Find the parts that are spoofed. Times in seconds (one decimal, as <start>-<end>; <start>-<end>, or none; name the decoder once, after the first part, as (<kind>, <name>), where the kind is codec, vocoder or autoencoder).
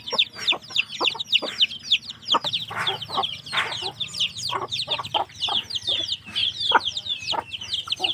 none